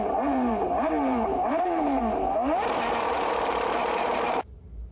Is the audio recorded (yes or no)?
no